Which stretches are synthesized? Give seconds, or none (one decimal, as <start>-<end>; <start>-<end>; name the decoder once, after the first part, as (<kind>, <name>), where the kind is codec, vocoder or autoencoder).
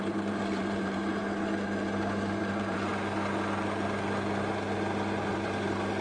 0.0-1.2 (vocoder, BigVGAN v2); 2.4-2.9; 5.3-6.0